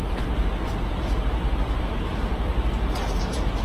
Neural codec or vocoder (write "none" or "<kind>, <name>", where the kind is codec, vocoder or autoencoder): none